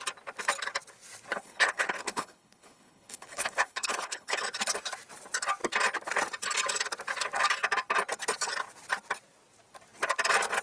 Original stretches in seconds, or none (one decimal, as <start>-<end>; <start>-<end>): 0.0-1.3; 4.4-10.6